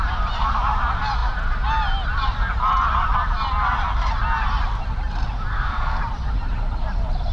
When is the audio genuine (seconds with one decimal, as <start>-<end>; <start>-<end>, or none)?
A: 0.0-5.5; 6.0-7.3

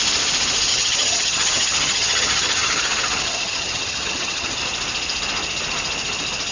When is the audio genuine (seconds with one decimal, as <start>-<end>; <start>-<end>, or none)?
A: 0.0-0.7; 4.6-6.5

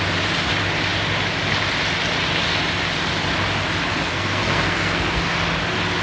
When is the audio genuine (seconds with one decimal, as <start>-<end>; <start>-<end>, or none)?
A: 0.0-4.0; 5.3-6.0

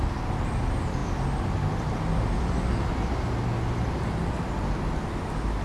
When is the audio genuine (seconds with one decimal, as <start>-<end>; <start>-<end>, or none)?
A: 0.0-5.6

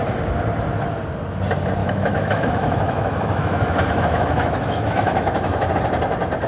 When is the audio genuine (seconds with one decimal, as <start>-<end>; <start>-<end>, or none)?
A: 0.0-1.8; 5.7-6.5

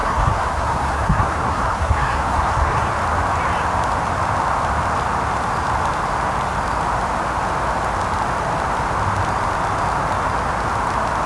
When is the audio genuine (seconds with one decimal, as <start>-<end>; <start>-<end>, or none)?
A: 2.9-11.3